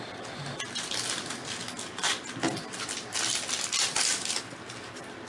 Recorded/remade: recorded